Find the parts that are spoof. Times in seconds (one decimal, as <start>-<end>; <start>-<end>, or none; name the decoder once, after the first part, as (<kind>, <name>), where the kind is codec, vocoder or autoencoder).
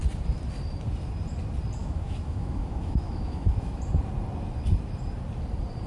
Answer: 1.8-3.8 (autoencoder, DAC-VAE)